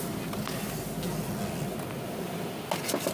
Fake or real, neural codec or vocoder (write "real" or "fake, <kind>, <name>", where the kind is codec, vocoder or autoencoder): real